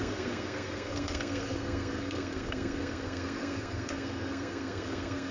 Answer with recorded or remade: remade